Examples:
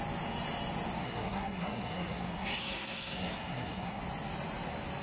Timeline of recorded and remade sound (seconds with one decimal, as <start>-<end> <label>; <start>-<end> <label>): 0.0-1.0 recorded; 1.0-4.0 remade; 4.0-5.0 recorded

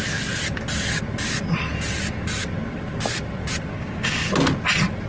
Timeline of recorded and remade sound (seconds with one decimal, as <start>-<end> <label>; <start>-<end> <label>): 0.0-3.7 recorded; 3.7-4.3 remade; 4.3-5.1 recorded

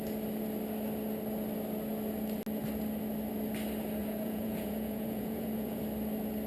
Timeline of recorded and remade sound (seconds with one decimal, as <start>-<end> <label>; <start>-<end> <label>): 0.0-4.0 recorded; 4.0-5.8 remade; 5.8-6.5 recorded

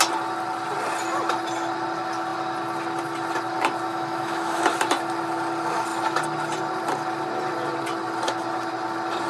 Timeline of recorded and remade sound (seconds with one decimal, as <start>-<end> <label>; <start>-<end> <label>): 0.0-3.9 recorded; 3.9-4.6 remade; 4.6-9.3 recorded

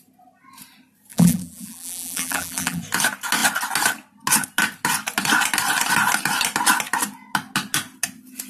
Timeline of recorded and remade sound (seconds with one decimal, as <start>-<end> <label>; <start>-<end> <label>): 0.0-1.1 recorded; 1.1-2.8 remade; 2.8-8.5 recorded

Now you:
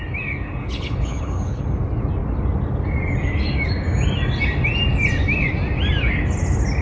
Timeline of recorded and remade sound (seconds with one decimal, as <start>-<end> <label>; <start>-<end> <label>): 0.0-0.6 recorded; 0.6-1.6 remade; 1.6-6.8 recorded